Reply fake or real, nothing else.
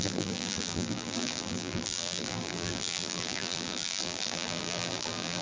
fake